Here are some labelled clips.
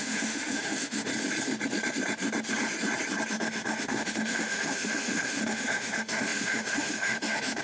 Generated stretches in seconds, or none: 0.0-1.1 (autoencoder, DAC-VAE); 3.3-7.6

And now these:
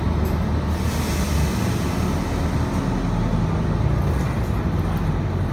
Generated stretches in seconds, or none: none

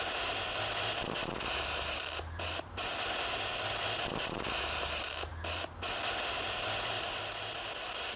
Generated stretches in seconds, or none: 0.0-5.3 (vocoder, BigVGAN v2); 6.2-8.2

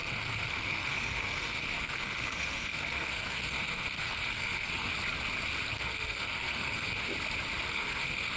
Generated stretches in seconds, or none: 0.0-4.9 (codec, SNAC); 5.7-7.1; 7.7-8.4

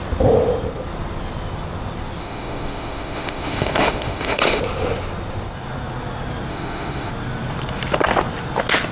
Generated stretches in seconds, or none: 2.2-4.6 (autoencoder, DAC-VAE); 6.5-7.1

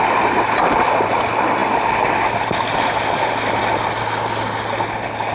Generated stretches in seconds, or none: none

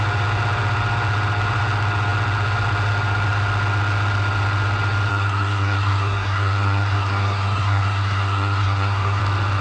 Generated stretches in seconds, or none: 5.1-9.2 (codec, SNAC)